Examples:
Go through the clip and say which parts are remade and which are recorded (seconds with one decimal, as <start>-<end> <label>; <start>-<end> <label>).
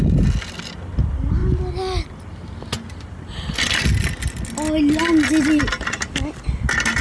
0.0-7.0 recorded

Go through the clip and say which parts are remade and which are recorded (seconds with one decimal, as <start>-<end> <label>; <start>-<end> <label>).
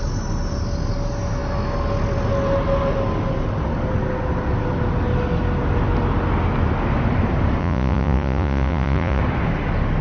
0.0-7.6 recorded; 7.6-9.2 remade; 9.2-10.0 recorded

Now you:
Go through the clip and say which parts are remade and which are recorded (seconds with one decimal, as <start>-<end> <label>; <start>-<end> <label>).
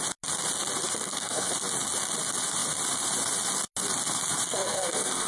0.0-1.0 recorded; 1.0-1.5 remade; 1.5-4.5 recorded; 4.5-5.3 remade